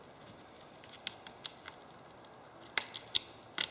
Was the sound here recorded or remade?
recorded